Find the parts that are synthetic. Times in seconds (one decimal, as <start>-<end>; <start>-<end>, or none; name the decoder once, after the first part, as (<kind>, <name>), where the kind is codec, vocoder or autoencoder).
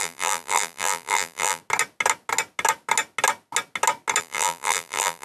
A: 0.0-1.6 (vocoder, BigVGAN v2); 4.2-5.2